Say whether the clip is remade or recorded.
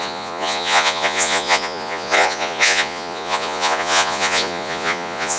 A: remade